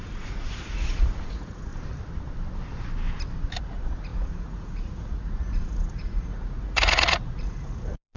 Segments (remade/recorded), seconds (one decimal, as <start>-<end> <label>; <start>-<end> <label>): 0.0-1.7 remade; 1.7-3.6 recorded; 3.6-8.2 remade